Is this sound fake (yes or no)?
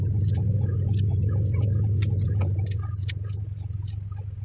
no